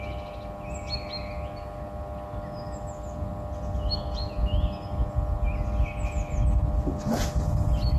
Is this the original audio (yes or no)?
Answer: yes